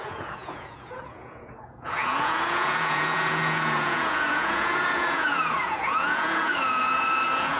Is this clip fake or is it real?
fake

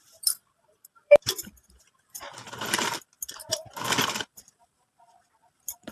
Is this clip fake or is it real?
fake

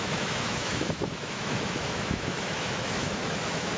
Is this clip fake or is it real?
fake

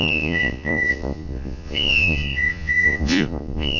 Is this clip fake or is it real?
fake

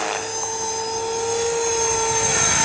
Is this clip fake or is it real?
real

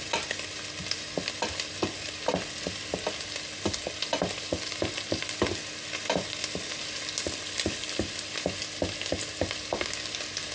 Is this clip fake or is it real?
real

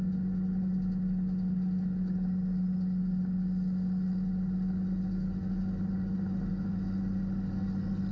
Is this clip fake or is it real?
real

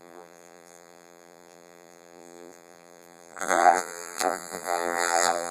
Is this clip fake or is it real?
fake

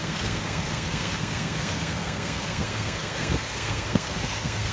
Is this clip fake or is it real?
fake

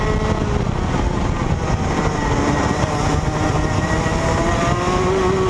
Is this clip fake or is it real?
real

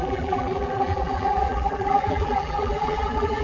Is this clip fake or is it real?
fake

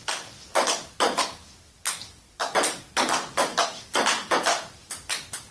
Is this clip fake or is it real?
real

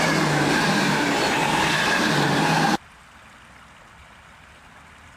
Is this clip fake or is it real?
real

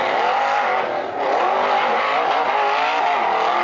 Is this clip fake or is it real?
real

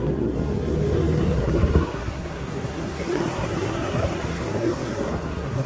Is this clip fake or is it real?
fake